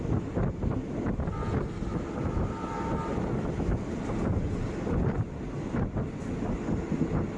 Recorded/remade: recorded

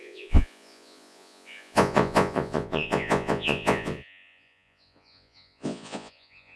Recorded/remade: remade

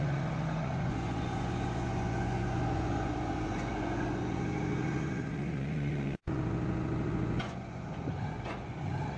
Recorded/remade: remade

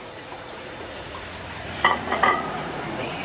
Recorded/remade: remade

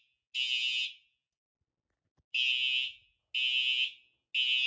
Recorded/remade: recorded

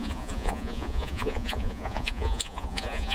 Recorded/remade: remade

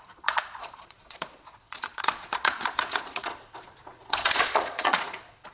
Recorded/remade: remade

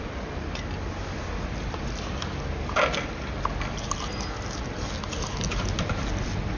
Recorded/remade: recorded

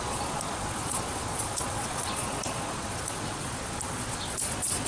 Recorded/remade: remade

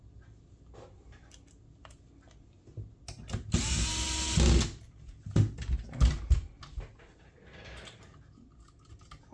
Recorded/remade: recorded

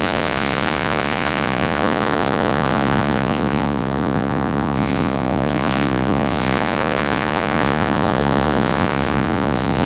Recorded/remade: remade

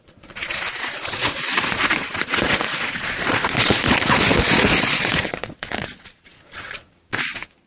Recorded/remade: remade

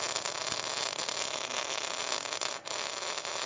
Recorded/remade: recorded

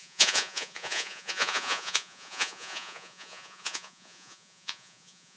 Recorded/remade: remade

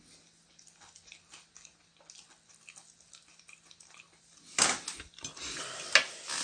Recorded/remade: recorded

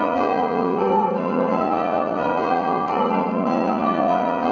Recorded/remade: remade